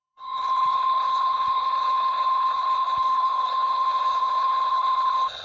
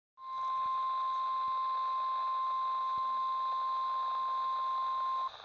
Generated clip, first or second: first